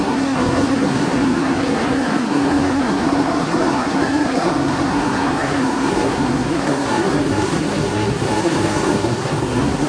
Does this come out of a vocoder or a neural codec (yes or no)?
yes